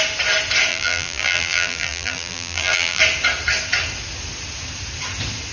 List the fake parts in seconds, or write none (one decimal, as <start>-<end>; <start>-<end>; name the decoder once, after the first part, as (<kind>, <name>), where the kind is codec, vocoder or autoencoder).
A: 0.7-3.0 (vocoder, BigVGAN v2)